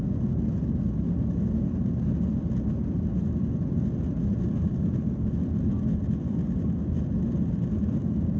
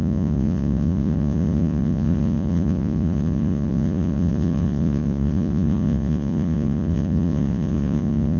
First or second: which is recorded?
first